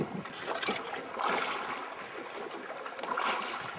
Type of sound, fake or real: real